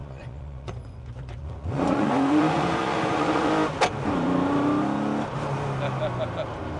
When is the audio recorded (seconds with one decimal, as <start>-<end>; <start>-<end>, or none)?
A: 3.5-6.8